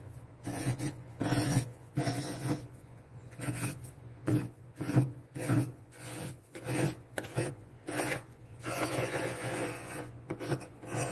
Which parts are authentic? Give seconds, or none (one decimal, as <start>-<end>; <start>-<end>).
none